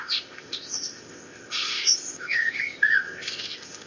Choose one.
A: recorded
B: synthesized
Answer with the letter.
B